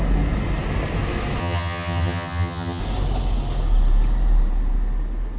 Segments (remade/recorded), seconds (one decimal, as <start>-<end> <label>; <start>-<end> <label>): 0.0-1.4 recorded; 1.4-2.8 remade; 2.8-5.4 recorded